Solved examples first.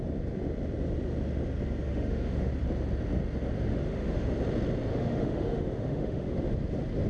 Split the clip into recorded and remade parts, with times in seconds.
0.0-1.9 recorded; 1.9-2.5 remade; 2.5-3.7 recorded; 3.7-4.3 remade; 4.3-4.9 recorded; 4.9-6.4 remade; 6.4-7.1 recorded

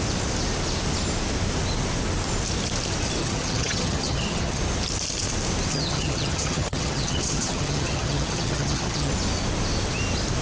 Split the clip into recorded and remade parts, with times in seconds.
0.0-3.2 recorded; 3.2-4.6 remade; 4.6-5.7 recorded; 5.7-9.1 remade; 9.1-10.4 recorded

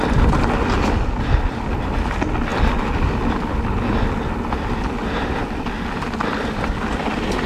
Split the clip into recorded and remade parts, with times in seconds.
0.0-7.5 recorded

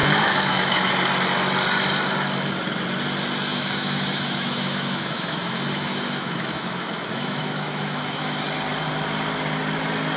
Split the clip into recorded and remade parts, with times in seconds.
0.0-0.9 remade; 0.9-3.5 recorded; 3.5-8.4 remade; 8.4-10.2 recorded

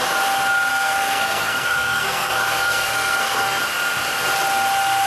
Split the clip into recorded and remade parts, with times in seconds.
0.0-0.7 recorded; 0.7-3.6 remade; 3.6-5.1 recorded

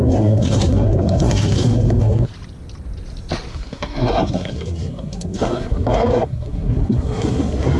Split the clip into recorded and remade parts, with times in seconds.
0.0-2.3 remade; 2.3-3.5 recorded; 3.5-7.8 remade